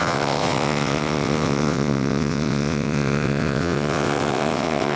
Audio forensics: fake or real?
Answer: fake